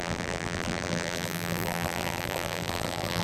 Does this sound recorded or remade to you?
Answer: remade